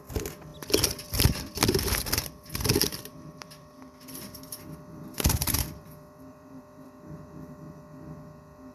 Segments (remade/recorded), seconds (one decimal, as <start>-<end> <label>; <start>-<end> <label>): 0.0-0.5 recorded; 0.5-1.8 remade; 1.8-3.1 recorded; 3.1-7.6 remade; 7.6-8.7 recorded